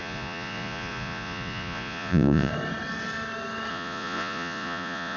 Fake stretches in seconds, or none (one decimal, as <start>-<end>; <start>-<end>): 0.0-2.5; 3.7-5.2